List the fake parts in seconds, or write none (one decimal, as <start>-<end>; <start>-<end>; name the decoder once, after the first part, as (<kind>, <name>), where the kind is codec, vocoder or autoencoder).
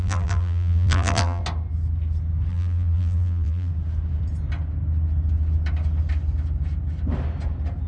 0.0-1.4 (vocoder, BigVGAN v2); 2.5-3.7